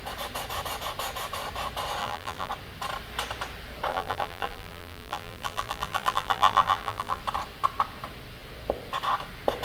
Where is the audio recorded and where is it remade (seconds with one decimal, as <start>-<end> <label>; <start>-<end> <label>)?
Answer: 0.0-2.0 recorded; 2.0-2.5 remade; 2.5-3.9 recorded; 3.9-7.2 remade; 7.2-9.6 recorded